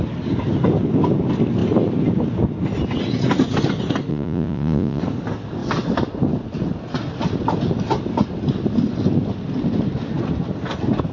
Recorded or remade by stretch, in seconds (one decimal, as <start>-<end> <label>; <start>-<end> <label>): 0.0-4.1 recorded; 4.1-5.0 remade; 5.0-11.1 recorded